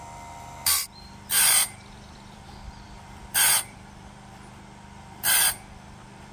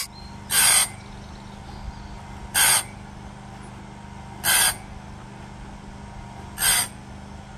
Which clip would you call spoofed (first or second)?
first